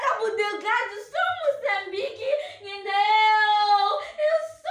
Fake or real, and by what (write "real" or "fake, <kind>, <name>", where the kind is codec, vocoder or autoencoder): real